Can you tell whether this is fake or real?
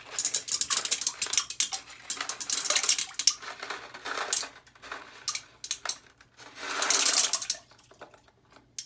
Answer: real